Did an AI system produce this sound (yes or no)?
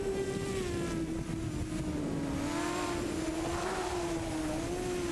no